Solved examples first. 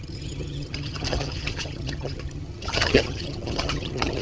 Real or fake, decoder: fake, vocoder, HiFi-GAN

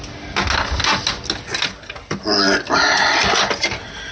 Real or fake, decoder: real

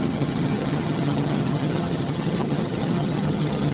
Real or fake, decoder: fake, vocoder, HiFi-GAN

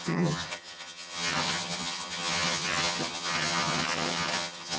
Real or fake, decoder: fake, vocoder, HiFi-GAN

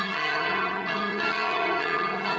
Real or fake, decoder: fake, vocoder, HiFi-GAN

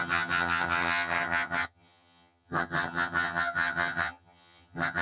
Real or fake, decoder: fake, vocoder, HiFi-GAN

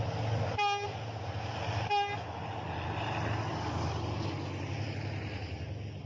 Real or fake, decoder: real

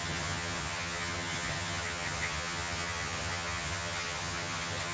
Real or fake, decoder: fake, vocoder, HiFi-GAN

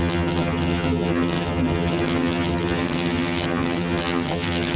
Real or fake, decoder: fake, vocoder, HiFi-GAN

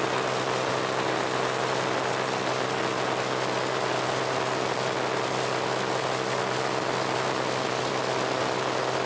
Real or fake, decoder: real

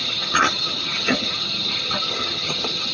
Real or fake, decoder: fake, vocoder, HiFi-GAN